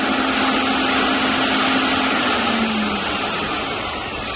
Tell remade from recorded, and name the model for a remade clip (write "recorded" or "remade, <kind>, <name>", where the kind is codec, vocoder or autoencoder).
recorded